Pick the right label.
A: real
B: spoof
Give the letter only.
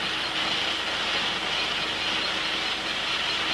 A